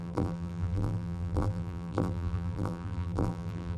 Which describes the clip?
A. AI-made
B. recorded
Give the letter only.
A